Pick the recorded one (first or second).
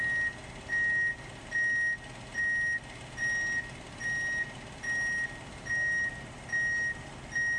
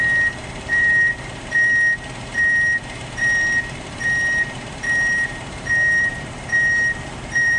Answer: first